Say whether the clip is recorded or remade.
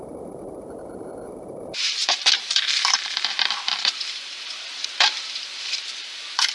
remade